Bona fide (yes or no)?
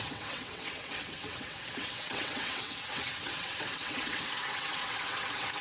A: no